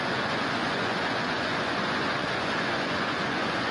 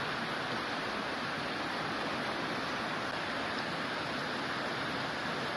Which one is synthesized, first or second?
first